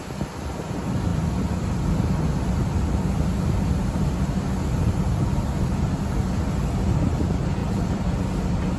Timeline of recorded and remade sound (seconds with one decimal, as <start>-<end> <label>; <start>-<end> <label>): 0.0-7.6 recorded; 7.6-8.4 remade; 8.4-8.8 recorded